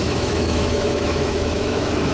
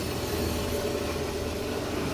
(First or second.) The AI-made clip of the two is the first